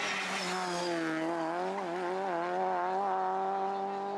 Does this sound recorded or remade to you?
recorded